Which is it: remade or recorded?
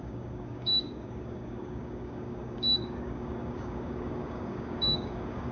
remade